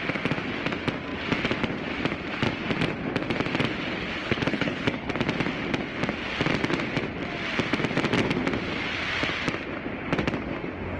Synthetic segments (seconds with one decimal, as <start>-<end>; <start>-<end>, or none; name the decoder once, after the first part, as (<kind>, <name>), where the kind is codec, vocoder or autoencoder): 4.2-5.1 (codec, HILCodec)